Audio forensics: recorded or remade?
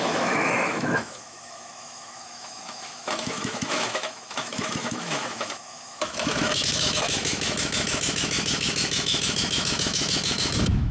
remade